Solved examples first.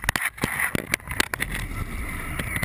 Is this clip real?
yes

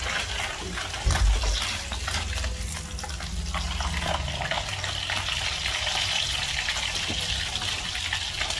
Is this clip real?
yes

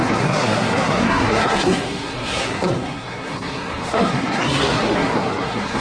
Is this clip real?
no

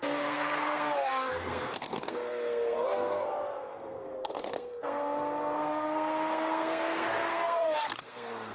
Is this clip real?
no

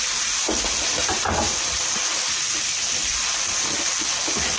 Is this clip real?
yes